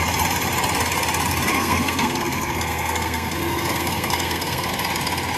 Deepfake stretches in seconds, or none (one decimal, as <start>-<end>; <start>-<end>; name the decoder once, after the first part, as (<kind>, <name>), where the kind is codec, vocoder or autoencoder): 1.5-4.7 (codec, SNAC)